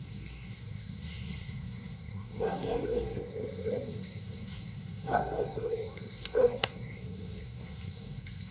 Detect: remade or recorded remade